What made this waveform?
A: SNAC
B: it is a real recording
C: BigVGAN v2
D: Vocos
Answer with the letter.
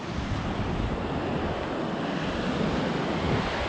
B